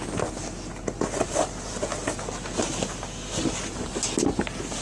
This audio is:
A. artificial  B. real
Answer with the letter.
B